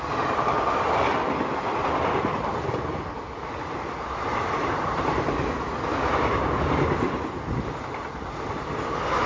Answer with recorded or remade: recorded